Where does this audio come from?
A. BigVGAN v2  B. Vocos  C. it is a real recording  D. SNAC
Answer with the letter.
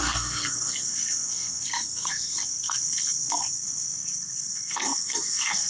D